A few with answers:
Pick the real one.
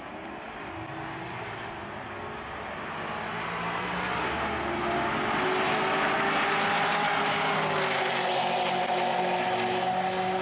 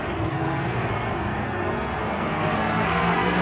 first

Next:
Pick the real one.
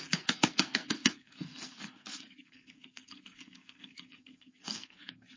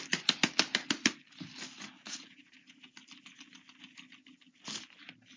second